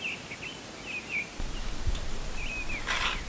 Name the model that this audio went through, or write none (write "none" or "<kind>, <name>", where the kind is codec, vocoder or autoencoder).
none